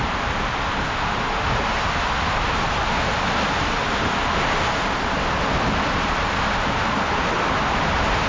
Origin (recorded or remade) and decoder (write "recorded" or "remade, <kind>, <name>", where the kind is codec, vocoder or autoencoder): recorded